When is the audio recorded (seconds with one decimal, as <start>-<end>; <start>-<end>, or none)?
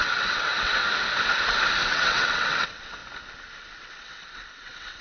0.8-1.9; 3.0-3.6